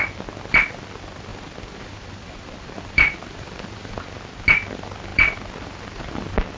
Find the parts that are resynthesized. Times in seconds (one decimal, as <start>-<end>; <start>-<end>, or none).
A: 1.3-4.0; 5.1-5.6